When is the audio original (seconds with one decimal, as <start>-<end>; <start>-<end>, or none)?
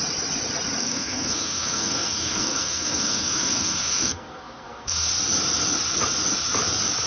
0.0-0.8; 5.1-7.1